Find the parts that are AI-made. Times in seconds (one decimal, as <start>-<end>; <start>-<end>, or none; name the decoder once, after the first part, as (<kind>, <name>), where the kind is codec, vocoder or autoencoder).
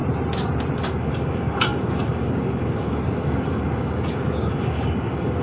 0.8-5.4 (codec, DAC)